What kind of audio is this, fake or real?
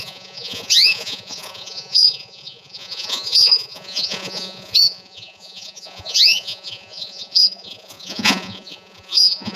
fake